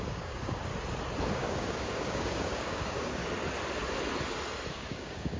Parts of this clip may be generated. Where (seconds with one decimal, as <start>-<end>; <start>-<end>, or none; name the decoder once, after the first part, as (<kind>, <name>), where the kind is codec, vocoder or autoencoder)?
0.0-0.7 (codec, DAC); 1.3-3.2; 4.7-5.4